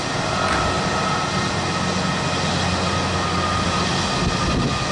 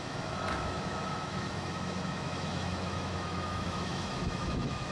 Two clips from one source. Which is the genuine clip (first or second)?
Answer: first